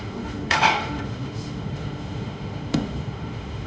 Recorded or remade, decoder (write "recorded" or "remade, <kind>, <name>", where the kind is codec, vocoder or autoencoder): remade, autoencoder, DAC-VAE